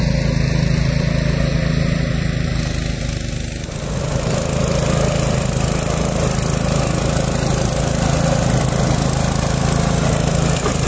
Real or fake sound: real